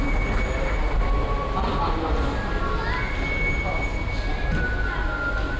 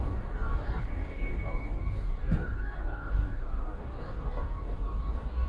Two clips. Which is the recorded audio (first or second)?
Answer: first